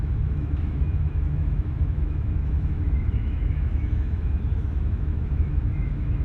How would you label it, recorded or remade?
remade